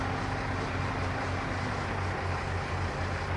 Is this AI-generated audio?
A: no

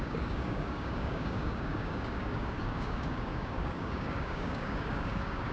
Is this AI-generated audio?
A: yes